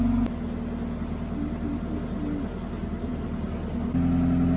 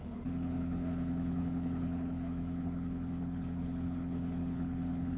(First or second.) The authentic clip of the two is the first